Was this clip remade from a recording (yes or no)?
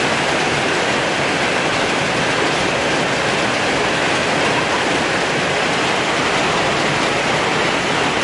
no